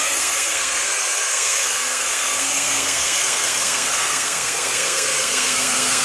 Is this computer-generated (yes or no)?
yes